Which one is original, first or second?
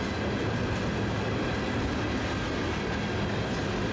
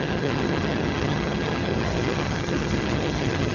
first